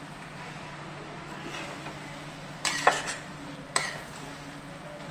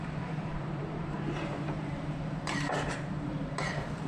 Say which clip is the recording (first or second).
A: first